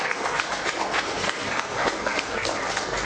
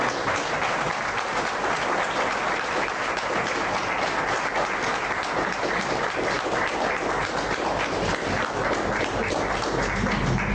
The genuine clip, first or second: second